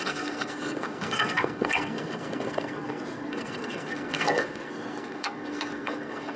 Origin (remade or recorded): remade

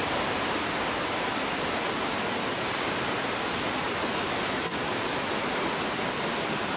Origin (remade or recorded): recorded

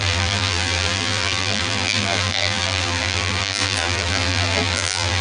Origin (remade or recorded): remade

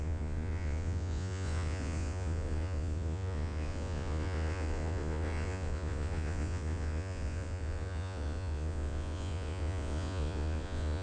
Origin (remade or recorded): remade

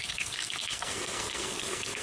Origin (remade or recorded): remade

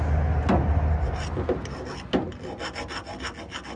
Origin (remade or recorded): recorded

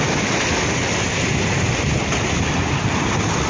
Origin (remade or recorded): recorded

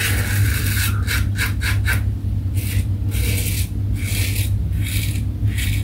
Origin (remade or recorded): recorded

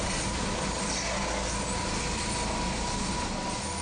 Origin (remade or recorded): recorded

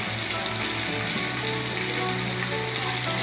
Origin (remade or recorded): recorded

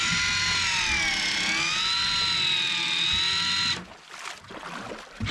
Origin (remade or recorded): recorded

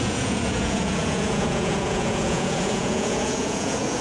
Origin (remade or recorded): remade